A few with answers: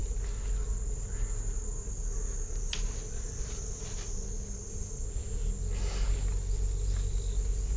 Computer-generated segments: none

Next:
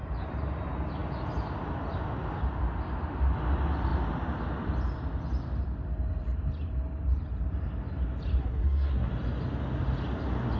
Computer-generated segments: 8.4-9.1 (codec, SNAC)

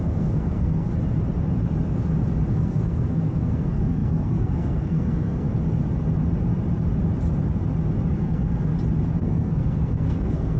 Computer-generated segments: 0.0-0.9 (codec, SNAC); 2.5-5.5; 8.1-8.7; 9.2-10.6

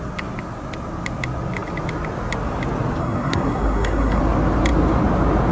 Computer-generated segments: 3.0-4.2 (codec, SNAC)